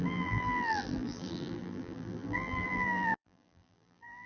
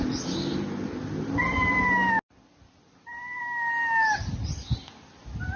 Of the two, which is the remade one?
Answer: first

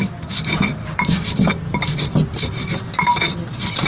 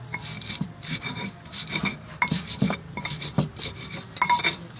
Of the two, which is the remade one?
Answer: first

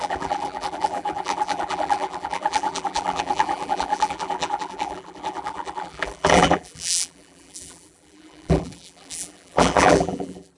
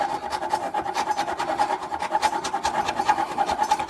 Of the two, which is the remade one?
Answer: first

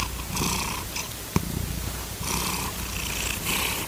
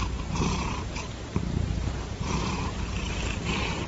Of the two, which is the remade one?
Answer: second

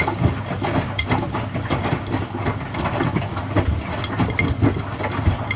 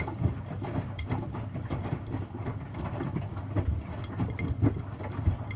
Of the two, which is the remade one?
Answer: second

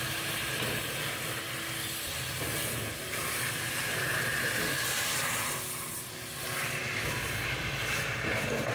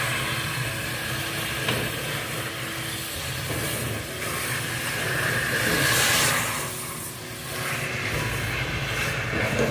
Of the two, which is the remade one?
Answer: first